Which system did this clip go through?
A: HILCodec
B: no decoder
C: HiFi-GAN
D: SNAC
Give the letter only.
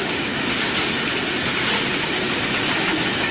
B